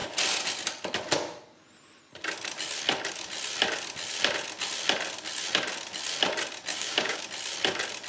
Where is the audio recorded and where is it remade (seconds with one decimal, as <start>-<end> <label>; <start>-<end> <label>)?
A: 0.0-6.7 recorded; 6.7-7.2 remade; 7.2-8.1 recorded